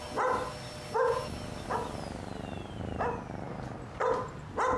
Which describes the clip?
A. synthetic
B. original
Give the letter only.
B